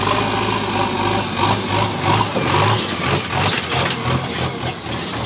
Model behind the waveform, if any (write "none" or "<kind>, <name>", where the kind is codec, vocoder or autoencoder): none